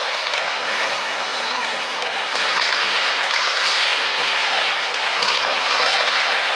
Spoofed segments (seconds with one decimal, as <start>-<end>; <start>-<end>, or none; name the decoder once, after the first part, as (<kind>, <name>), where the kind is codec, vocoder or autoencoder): 0.0-6.6 (codec, SNAC)